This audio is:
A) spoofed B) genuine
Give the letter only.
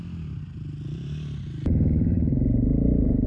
B